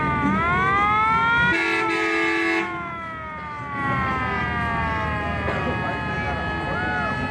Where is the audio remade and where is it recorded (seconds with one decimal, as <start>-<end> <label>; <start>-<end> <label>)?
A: 0.0-7.3 recorded